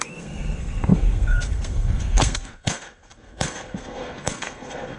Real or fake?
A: fake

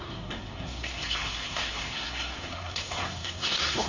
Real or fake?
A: fake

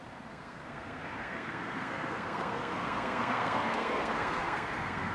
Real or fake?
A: fake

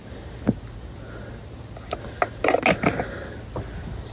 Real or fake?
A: real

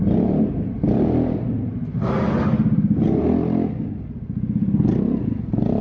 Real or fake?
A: real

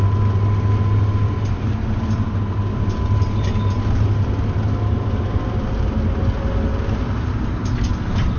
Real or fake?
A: real